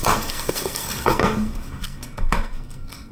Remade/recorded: remade